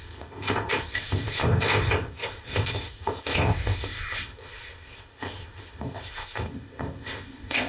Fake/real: fake